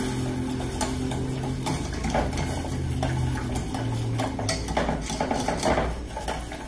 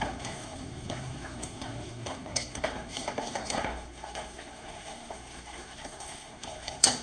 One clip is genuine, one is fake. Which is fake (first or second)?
second